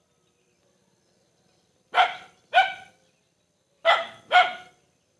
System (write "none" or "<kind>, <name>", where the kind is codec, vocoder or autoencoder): none